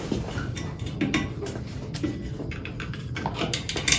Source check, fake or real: real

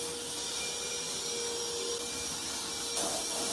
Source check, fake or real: real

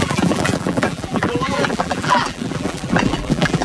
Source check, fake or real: fake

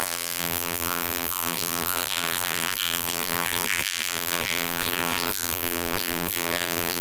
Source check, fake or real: fake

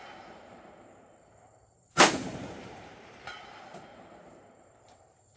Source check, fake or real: fake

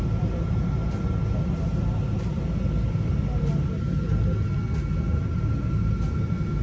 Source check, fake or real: real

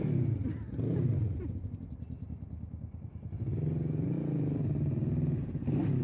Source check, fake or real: real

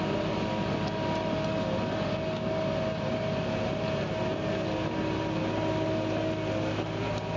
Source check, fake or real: real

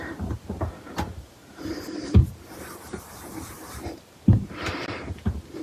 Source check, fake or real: fake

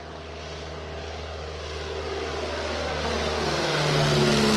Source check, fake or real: real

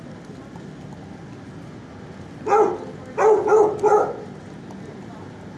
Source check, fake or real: real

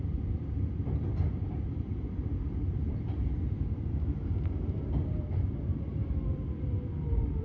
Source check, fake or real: fake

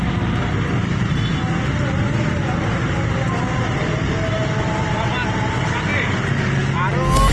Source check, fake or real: real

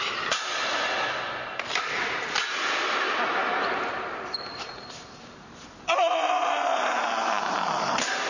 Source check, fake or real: fake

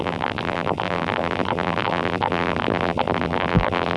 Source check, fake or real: fake